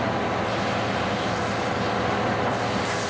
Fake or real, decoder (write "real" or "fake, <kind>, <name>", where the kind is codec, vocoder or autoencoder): real